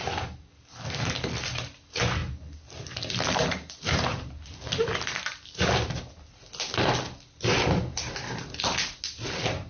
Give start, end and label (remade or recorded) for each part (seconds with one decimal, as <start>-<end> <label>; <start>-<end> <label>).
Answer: 0.0-2.2 recorded; 2.2-6.3 remade; 6.3-9.7 recorded